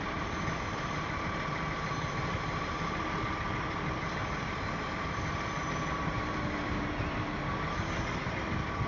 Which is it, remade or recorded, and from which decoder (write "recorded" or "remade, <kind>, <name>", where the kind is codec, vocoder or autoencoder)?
remade, vocoder, BigVGAN v2